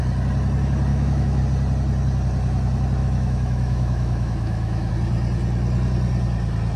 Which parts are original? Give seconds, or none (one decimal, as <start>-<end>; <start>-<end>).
0.0-0.9; 1.4-3.0; 4.9-6.8

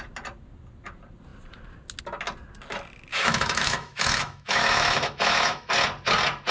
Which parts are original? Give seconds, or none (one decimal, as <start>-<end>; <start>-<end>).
0.0-3.1; 5.7-6.5

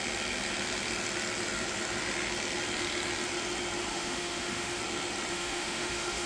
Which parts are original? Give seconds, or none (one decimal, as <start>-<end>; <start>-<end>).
0.0-3.9; 4.8-5.3

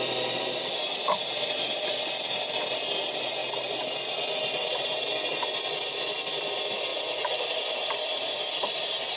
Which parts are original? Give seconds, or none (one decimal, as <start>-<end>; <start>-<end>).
0.0-9.2